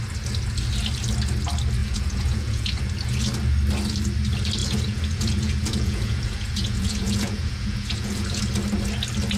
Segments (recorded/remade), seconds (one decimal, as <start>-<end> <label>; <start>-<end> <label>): 0.0-1.8 recorded; 1.8-2.8 remade; 2.8-4.6 recorded; 4.6-8.4 remade; 8.4-9.4 recorded